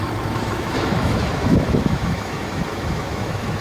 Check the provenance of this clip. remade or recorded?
remade